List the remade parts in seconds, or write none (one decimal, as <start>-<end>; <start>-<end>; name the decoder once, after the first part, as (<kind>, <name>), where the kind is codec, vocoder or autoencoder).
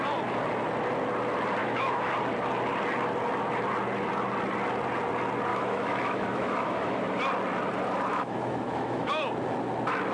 1.6-2.1 (autoencoder, DAC-VAE); 5.5-7.2; 8.1-9.1